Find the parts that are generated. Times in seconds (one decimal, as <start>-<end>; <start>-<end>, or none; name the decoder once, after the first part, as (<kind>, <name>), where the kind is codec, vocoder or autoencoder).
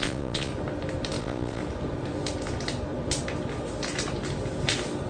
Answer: 0.0-0.5 (vocoder, Vocos); 1.2-1.6